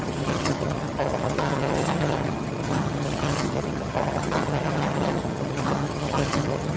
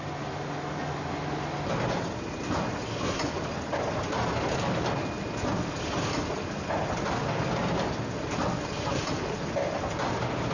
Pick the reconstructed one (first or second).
first